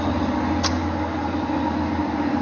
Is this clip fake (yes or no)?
no